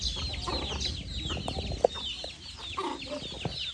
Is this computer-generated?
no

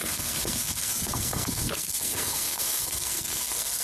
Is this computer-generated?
yes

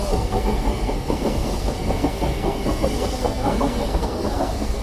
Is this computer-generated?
yes